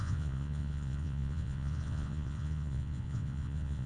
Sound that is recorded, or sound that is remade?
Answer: remade